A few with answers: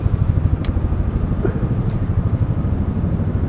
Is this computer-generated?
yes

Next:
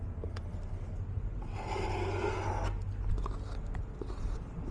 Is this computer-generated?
no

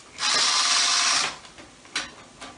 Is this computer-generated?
no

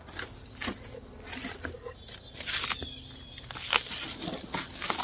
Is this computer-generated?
no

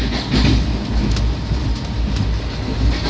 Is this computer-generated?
no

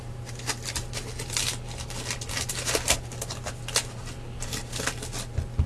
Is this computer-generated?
no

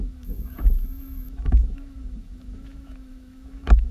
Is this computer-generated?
yes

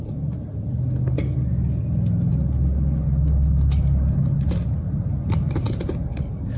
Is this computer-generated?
no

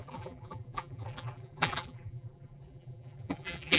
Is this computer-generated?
yes